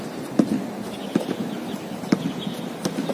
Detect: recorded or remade recorded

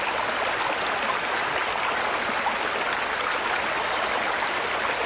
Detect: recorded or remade recorded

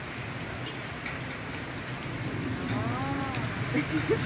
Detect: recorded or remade recorded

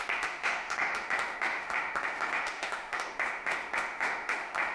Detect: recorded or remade remade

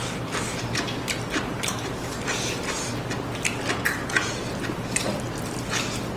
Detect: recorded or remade recorded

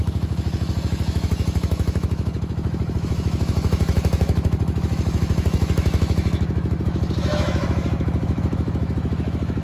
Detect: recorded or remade remade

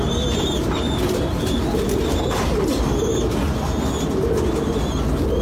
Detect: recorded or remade recorded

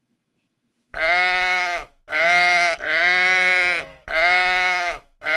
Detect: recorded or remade remade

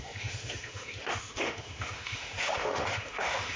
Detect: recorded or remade remade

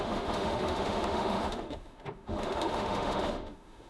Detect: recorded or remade remade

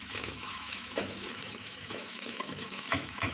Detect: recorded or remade remade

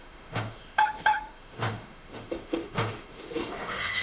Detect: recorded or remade remade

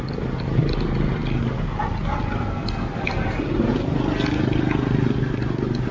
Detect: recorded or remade recorded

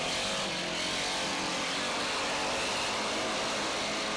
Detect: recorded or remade recorded